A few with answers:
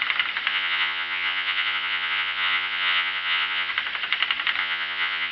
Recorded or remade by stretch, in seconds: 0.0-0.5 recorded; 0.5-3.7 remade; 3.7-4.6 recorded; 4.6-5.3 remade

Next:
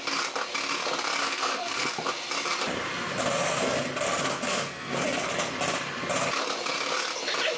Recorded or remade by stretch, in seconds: 0.0-1.2 recorded; 1.2-1.9 remade; 1.9-4.2 recorded; 4.2-5.3 remade; 5.3-7.6 recorded

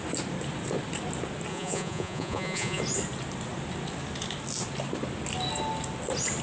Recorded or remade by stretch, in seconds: 0.0-1.5 recorded; 1.5-2.8 remade; 2.8-6.4 recorded

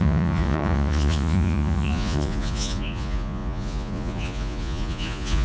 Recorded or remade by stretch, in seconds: 0.0-5.4 remade